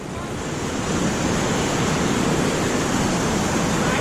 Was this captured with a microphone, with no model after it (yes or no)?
yes